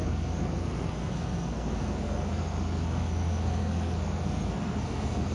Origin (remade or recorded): remade